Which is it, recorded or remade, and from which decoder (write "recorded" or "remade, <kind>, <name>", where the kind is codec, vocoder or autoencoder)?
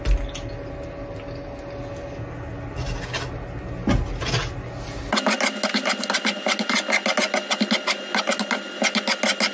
recorded